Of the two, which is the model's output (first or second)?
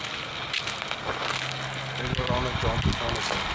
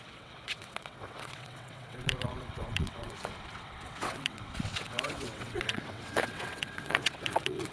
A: second